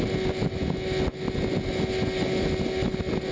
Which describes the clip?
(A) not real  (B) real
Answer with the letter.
B